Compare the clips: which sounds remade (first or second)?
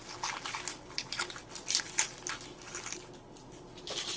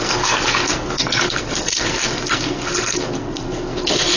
second